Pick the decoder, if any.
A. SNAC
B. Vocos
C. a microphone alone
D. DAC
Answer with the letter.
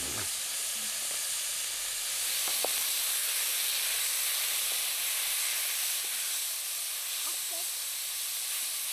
C